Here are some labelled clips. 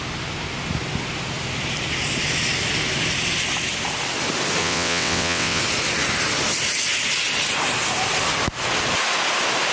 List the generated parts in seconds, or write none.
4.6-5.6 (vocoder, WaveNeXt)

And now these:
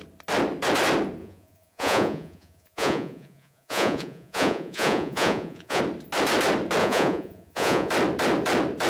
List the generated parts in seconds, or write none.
1.2-5.8 (vocoder, Vocos); 6.8-7.9

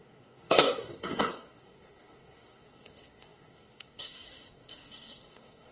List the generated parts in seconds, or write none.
0.0-5.7 (codec, SNAC)

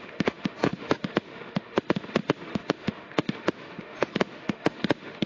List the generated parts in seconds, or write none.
0.0-5.3 (autoencoder, DAC-VAE)

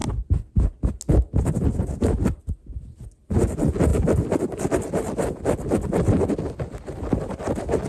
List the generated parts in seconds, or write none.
3.9-7.9 (vocoder, BigVGAN v2)

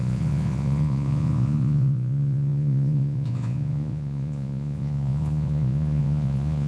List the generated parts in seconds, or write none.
0.0-6.7 (vocoder, Vocos)

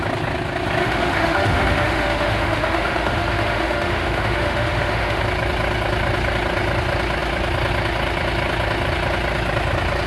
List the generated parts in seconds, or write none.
0.8-5.2 (autoencoder, DAC-VAE)

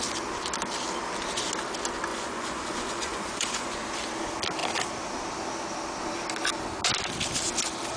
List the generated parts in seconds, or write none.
2.1-3.8 (vocoder, Vocos)